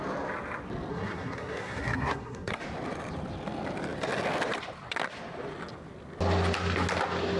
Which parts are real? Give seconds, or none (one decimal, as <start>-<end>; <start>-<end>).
0.0-0.9; 2.6-7.4